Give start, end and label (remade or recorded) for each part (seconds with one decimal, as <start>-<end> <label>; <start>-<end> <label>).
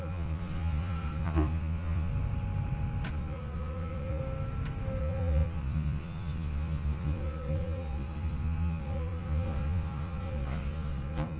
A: 0.0-2.1 remade; 2.1-3.1 recorded; 3.1-4.2 remade; 4.2-5.0 recorded; 5.0-11.4 remade